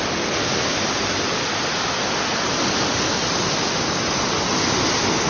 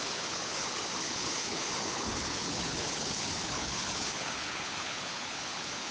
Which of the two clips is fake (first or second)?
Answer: second